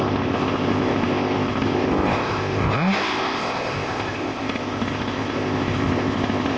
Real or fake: fake